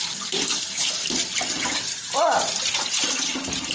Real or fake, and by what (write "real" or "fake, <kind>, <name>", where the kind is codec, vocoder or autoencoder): real